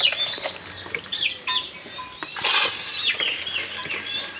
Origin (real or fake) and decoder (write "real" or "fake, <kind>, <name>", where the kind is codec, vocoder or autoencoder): real